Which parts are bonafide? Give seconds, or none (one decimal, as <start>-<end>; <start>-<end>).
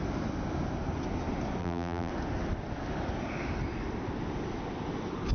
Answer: 0.0-1.6; 2.1-5.3